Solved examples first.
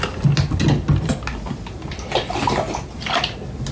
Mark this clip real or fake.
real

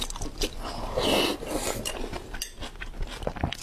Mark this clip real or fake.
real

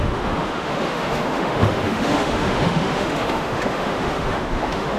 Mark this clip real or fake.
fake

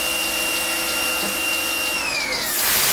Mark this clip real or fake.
real